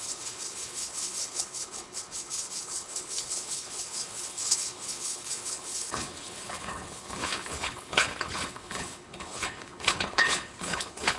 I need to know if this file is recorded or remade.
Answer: remade